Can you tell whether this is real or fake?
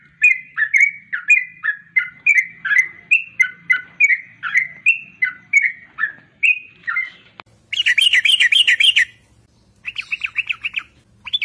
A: real